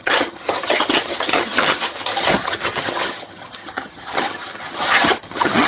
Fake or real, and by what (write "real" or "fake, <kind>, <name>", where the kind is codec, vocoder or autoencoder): fake, vocoder, HiFi-GAN